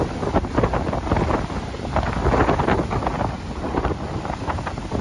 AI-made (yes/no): no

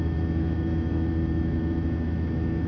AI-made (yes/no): yes